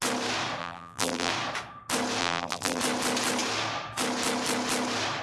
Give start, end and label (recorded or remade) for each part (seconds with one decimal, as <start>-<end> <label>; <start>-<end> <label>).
0.0-0.6 recorded; 0.6-1.3 remade; 1.3-2.2 recorded; 2.2-2.8 remade; 2.8-5.2 recorded